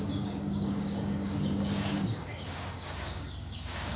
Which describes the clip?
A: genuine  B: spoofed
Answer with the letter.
B